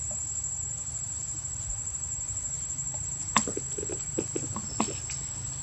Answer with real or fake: real